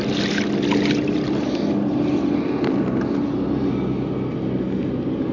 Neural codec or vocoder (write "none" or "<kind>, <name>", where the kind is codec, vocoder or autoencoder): none